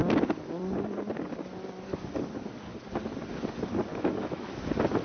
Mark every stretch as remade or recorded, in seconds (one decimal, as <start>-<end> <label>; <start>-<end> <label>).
0.0-3.9 recorded; 3.9-4.5 remade; 4.5-5.0 recorded